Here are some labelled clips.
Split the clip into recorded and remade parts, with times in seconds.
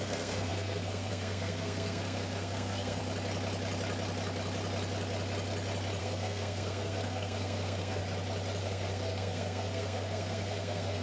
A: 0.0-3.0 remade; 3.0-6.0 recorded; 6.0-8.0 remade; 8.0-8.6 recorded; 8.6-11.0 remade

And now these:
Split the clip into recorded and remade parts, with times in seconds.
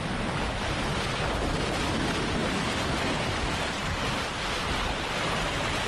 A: 0.0-5.9 recorded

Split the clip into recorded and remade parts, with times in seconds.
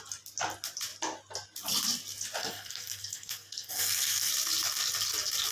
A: 0.0-2.4 recorded; 2.4-4.3 remade; 4.3-5.5 recorded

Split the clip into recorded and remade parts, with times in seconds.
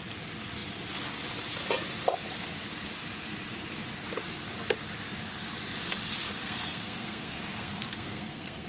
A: 0.0-6.4 recorded; 6.4-8.7 remade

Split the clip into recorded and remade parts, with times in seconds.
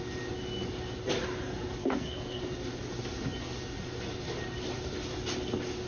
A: 0.0-1.8 recorded; 1.8-2.4 remade; 2.4-5.9 recorded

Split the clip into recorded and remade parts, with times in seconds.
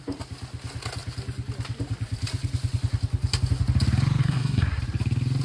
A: 0.0-4.2 recorded; 4.2-4.8 remade; 4.8-5.4 recorded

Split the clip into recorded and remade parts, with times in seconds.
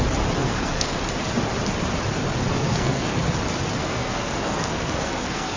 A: 0.0-0.4 recorded; 0.4-1.0 remade; 1.0-2.5 recorded; 2.5-3.2 remade; 3.2-3.8 recorded; 3.8-5.6 remade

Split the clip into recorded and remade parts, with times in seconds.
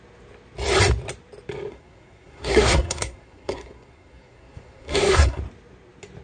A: 0.0-1.7 recorded; 1.7-5.4 remade; 5.4-6.2 recorded